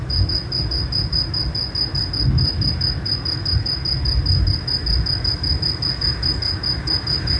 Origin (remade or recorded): recorded